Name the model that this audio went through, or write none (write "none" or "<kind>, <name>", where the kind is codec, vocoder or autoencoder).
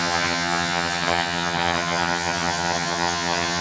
vocoder, HiFi-GAN